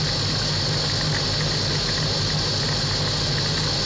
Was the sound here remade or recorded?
recorded